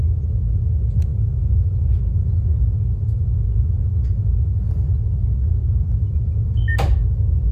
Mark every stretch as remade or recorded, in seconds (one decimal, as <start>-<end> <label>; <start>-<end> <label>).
0.0-1.1 recorded; 1.1-2.0 remade; 2.0-7.5 recorded